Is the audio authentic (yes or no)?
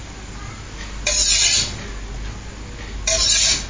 yes